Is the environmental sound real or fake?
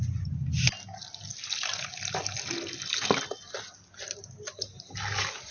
real